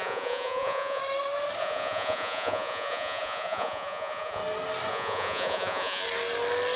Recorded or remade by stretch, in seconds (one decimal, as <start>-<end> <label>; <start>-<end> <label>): 0.0-1.0 remade; 1.0-1.6 recorded; 1.6-4.4 remade; 4.4-4.9 recorded; 4.9-6.0 remade; 6.0-6.8 recorded

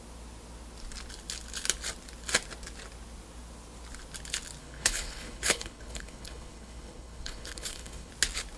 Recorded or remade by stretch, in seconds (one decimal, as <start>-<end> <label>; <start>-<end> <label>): 0.0-4.6 recorded; 4.6-8.1 remade; 8.1-8.6 recorded

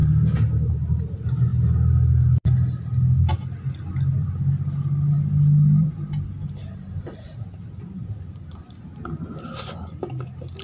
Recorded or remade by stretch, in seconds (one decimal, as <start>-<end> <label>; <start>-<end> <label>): 0.0-5.8 recorded; 5.8-8.1 remade; 8.1-10.6 recorded

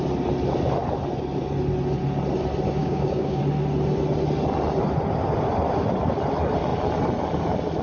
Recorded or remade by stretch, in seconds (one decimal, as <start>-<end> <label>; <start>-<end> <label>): 0.0-2.8 recorded; 2.8-3.4 remade; 3.4-7.8 recorded

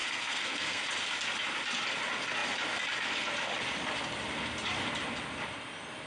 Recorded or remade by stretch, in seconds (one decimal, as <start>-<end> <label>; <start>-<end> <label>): 0.0-0.8 remade; 0.8-6.1 recorded

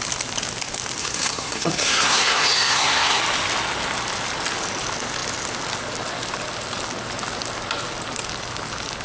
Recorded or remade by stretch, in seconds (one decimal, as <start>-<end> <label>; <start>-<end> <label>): 0.0-1.0 recorded; 1.0-3.2 remade; 3.2-9.0 recorded

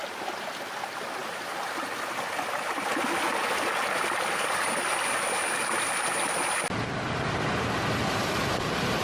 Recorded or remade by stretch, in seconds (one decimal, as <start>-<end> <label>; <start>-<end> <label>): 0.0-9.0 recorded

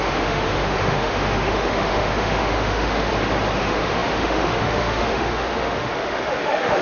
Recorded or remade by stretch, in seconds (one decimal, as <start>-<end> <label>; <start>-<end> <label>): 0.0-3.1 remade; 3.1-3.6 recorded; 3.6-6.8 remade